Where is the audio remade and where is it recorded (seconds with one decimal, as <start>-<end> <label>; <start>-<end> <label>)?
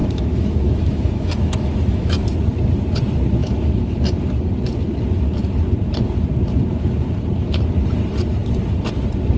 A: 0.0-2.4 remade; 2.4-3.4 recorded; 3.4-4.0 remade; 4.0-9.4 recorded